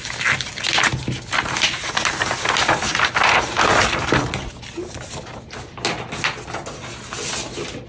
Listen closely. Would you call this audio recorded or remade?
recorded